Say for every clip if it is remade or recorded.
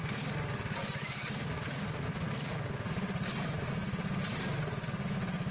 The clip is recorded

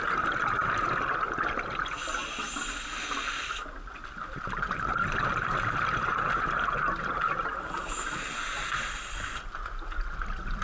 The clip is recorded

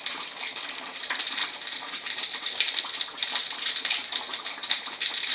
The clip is remade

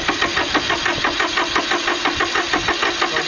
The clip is recorded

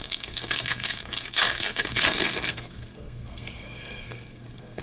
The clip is remade